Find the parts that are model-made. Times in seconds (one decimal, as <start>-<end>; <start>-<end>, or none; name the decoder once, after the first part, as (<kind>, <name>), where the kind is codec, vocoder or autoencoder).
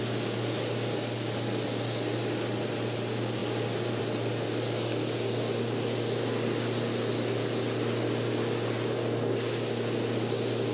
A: none